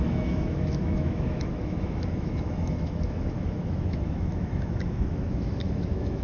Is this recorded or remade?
remade